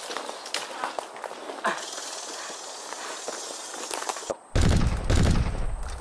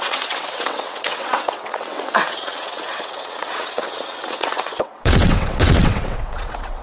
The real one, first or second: first